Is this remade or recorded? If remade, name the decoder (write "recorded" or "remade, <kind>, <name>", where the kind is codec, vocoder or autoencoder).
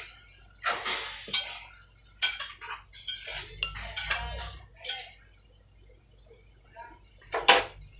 recorded